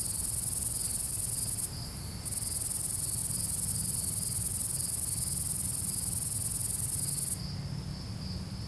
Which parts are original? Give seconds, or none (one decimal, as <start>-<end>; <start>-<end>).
0.0-8.7

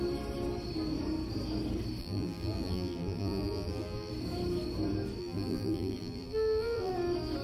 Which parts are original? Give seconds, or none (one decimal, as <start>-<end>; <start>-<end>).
0.0-2.0; 4.1-5.2; 6.9-7.4

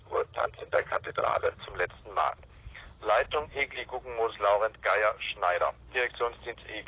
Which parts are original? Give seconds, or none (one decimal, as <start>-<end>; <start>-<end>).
1.7-6.9